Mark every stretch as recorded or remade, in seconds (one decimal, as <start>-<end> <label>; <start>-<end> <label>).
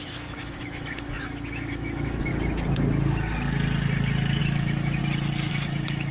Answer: 0.0-2.3 remade; 2.3-4.4 recorded; 4.4-5.0 remade; 5.0-5.5 recorded; 5.5-6.1 remade